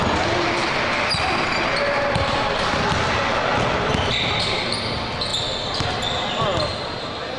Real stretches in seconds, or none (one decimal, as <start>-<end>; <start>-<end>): 0.0-7.4